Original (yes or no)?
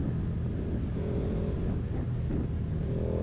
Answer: yes